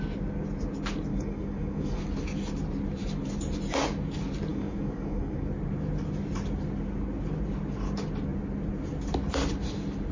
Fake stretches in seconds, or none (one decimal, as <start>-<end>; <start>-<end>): 1.1-2.0; 4.5-5.5